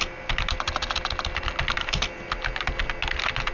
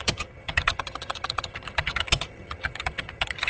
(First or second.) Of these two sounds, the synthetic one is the second